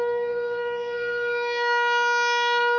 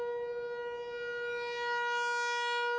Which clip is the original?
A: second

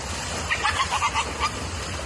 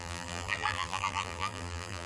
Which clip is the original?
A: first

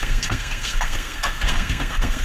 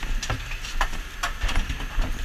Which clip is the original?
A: second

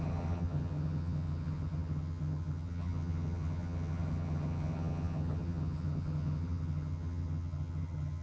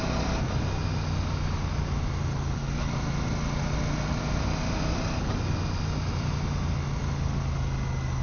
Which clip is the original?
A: second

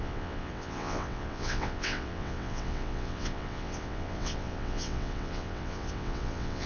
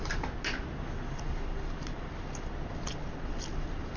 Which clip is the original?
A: second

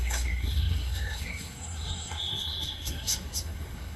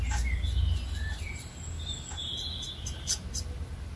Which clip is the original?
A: second